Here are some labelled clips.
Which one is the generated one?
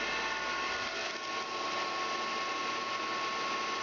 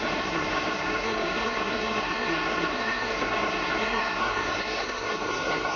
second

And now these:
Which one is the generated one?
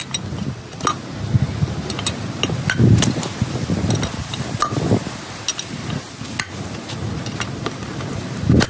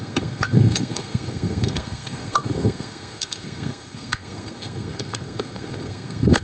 second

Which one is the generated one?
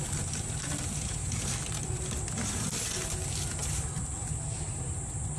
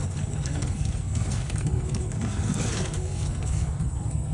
second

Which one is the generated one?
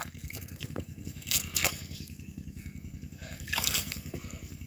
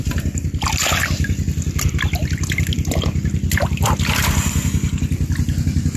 first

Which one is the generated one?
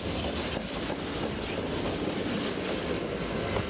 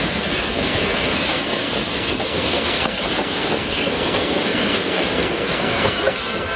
second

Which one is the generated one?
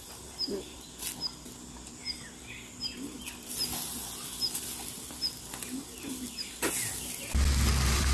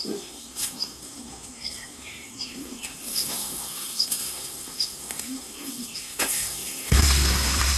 second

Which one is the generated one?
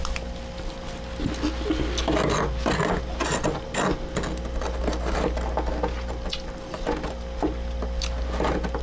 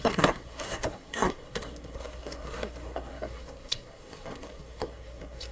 second